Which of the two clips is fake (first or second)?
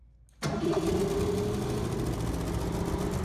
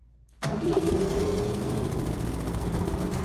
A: second